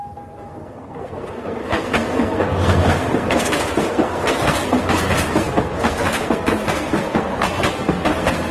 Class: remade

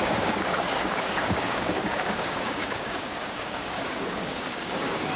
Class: remade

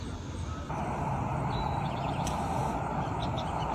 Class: remade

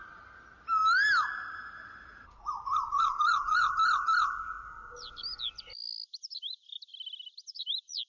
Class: recorded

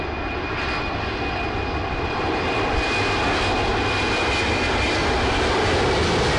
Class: recorded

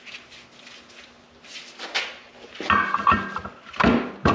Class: recorded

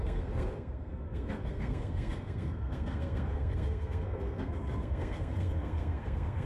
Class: remade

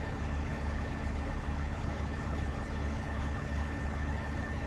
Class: remade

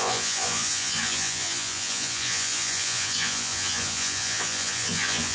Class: remade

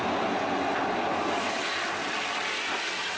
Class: recorded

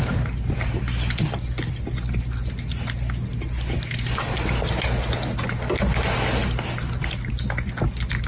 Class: recorded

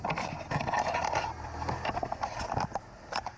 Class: recorded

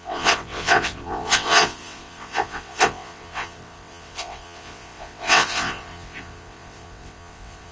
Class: remade